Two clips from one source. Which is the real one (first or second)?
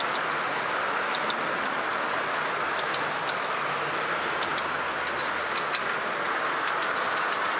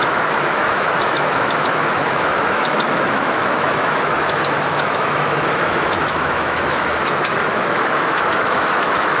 first